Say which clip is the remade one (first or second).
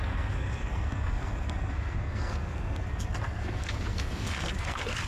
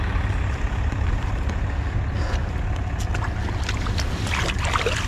first